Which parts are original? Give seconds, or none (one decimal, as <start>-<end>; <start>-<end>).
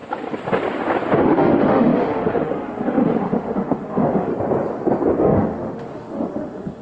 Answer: 0.0-1.2; 4.3-5.2